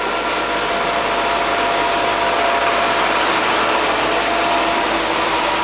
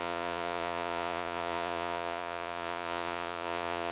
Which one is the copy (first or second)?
second